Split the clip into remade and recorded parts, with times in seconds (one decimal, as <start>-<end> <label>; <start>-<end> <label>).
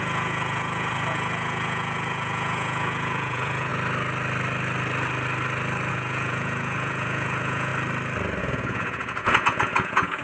0.0-3.7 remade; 3.7-5.9 recorded; 5.9-7.7 remade; 7.7-8.4 recorded; 8.4-10.2 remade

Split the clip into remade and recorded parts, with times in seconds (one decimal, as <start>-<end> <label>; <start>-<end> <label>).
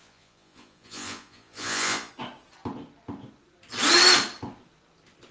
0.0-2.1 remade; 2.1-5.3 recorded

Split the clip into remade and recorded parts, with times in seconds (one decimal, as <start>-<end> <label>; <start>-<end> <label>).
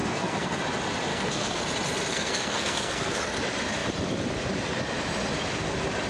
0.0-0.6 remade; 0.6-1.1 recorded; 1.1-1.6 remade; 1.6-2.1 recorded; 2.1-3.2 remade; 3.2-6.1 recorded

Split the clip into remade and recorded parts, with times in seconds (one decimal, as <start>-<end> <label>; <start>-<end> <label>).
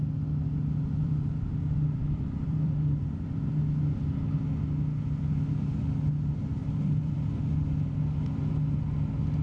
0.0-1.0 recorded; 1.0-3.5 remade; 3.5-6.6 recorded; 6.6-7.4 remade; 7.4-9.4 recorded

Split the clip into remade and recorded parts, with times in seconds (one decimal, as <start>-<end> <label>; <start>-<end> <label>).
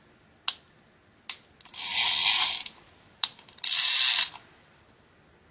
0.0-5.5 recorded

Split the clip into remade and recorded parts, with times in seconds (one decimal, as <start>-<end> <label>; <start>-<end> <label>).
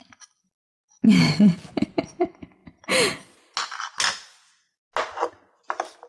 0.0-6.1 recorded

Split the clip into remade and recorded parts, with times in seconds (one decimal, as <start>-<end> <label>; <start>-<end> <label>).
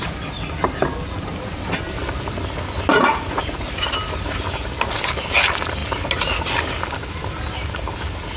0.0-2.9 recorded; 2.9-3.7 remade; 3.7-8.4 recorded